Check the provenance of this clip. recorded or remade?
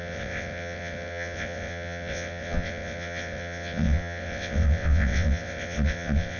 remade